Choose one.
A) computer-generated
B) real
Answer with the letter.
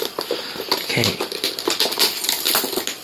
A